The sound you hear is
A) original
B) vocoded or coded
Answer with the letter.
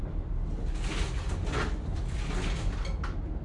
A